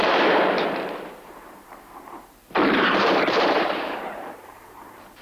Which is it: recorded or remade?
remade